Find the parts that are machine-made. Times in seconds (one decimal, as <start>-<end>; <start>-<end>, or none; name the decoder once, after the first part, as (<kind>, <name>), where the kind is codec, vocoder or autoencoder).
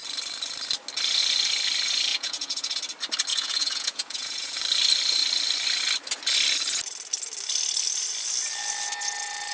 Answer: 2.1-2.8 (vocoder, Vocos); 3.3-4.6